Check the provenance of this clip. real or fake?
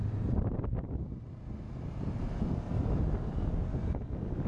real